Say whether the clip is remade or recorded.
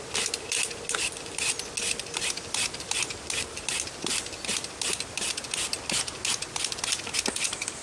recorded